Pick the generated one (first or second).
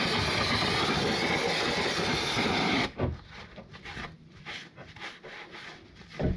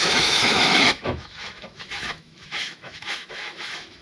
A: second